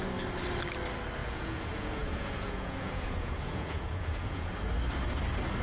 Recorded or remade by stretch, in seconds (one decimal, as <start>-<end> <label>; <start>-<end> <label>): 0.0-1.2 recorded; 1.2-4.6 remade; 4.6-5.6 recorded